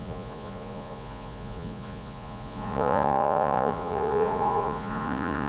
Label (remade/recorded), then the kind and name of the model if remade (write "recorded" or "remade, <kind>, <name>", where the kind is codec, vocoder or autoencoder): remade, vocoder, Vocos